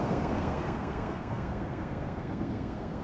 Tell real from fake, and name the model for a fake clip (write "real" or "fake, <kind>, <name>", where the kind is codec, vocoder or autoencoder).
fake, codec, SNAC